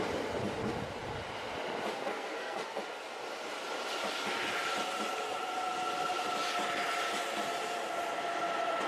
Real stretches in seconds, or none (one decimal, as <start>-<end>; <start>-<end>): 0.0-1.9; 2.8-8.9